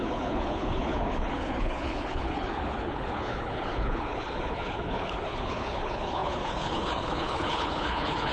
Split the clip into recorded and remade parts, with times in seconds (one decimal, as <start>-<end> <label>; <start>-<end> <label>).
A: 0.0-8.3 remade